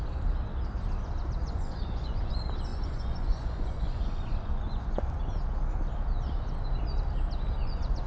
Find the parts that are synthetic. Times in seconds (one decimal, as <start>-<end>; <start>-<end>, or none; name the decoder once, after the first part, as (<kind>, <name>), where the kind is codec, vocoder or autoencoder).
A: 1.4-2.3 (vocoder, Vocos); 2.7-5.2; 7.6-8.1